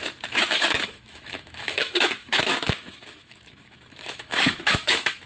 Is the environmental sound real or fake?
fake